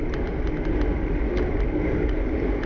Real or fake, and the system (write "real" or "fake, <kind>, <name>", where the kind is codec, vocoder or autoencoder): real